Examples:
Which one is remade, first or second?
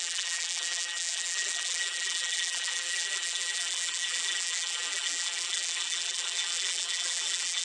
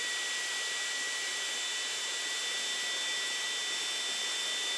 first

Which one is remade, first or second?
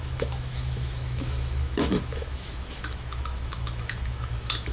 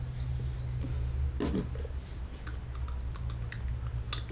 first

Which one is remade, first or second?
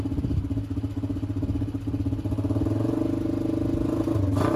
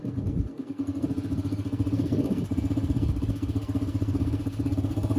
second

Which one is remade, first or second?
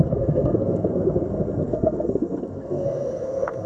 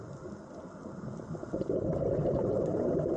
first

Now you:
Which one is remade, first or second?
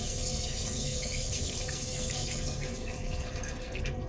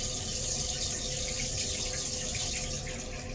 first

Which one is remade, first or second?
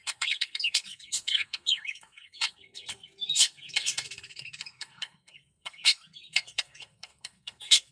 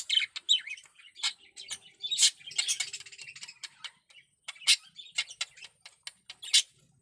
first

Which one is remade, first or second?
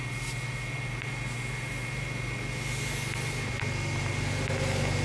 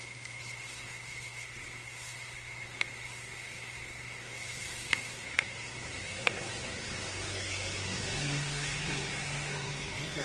second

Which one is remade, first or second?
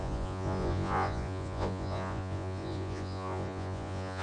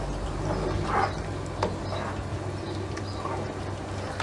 first